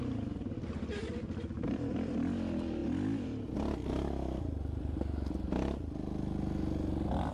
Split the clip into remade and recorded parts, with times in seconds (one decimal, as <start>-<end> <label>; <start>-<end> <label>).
0.0-7.3 recorded